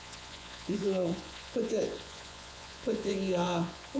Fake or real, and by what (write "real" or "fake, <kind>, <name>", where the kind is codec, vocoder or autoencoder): fake, vocoder, Vocos